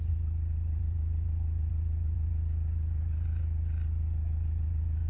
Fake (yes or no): yes